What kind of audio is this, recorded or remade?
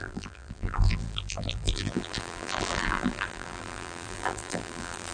remade